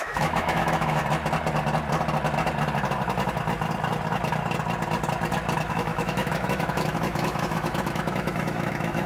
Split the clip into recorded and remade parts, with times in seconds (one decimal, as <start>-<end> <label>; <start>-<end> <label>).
0.0-1.0 remade; 1.0-5.7 recorded; 5.7-9.1 remade

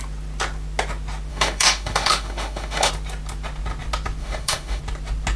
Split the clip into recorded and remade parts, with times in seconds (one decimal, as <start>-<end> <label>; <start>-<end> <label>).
0.0-1.3 recorded; 1.3-2.9 remade; 2.9-4.2 recorded; 4.2-4.8 remade; 4.8-5.4 recorded